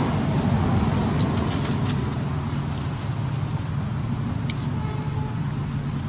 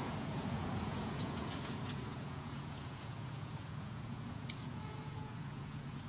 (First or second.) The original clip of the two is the first